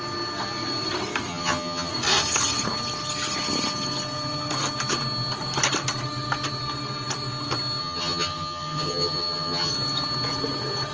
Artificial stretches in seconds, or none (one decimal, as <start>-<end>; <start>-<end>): 1.3-1.9; 7.8-9.7